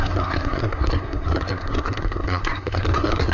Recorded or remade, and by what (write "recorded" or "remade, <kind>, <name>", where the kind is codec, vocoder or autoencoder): remade, codec, SNAC